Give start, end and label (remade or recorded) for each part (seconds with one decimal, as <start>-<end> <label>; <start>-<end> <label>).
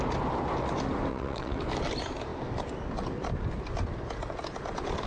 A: 0.0-1.1 recorded; 1.1-1.6 remade; 1.6-5.1 recorded